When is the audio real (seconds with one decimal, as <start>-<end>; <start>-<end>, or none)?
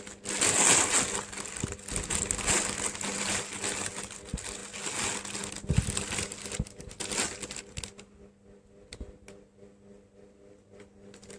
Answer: 0.0-11.4